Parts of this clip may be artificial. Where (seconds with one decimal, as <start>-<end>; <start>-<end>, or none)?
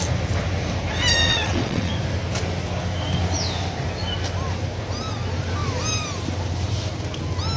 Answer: 1.2-1.9